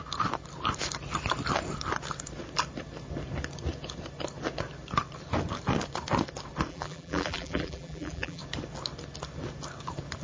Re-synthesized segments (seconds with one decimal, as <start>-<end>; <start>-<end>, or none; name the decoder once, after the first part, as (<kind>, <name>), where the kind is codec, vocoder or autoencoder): 6.7-8.4 (vocoder, BigVGAN v2)